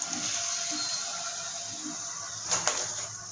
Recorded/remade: recorded